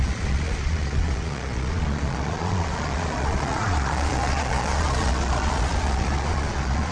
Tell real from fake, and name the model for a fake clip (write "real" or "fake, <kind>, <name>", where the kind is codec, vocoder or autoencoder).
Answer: fake, vocoder, Vocos